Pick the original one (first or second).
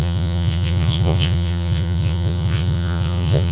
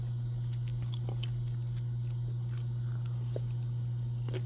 second